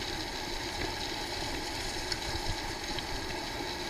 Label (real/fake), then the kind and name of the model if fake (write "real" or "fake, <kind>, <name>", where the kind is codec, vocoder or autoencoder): real